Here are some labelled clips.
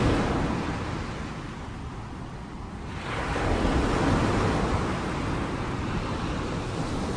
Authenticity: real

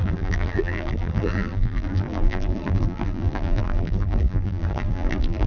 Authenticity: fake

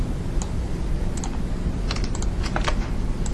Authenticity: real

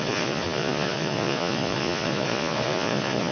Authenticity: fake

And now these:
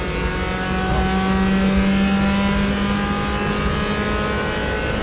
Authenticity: real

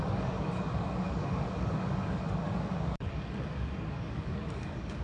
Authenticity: fake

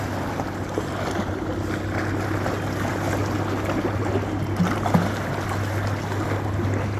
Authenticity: real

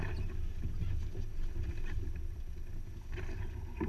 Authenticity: real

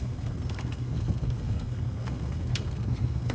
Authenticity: fake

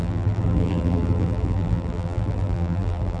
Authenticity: fake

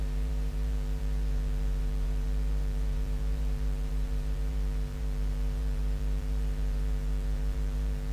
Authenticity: fake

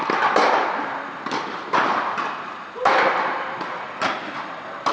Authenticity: real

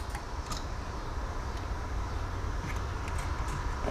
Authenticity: real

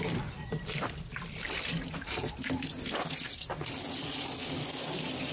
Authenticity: real